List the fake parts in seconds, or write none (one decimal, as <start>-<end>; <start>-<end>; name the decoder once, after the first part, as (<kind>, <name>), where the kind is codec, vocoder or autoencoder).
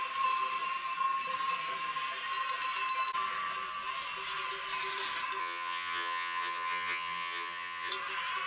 5.4-7.9 (vocoder, HiFi-GAN)